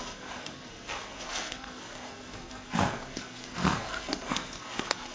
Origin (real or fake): fake